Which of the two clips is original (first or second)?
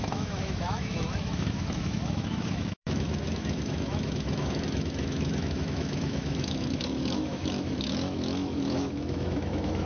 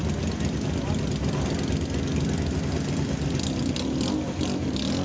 second